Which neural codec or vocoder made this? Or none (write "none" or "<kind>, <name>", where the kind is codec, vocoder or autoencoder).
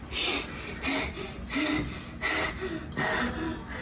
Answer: none